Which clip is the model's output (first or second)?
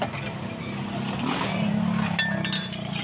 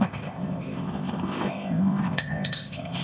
second